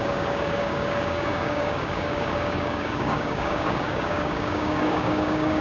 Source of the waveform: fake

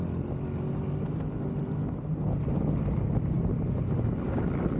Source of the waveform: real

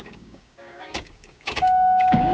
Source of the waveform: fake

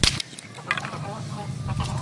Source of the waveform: real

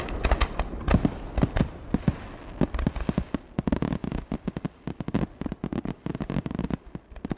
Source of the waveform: real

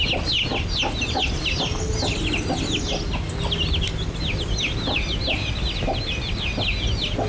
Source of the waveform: real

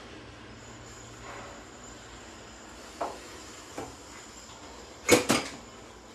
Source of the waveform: real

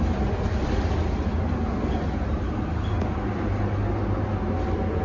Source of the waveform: real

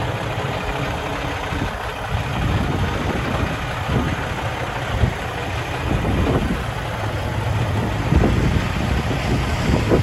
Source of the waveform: real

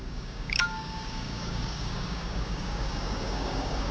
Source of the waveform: fake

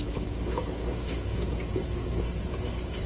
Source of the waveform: fake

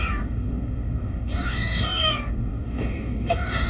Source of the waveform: fake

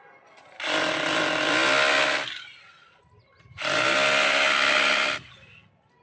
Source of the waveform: real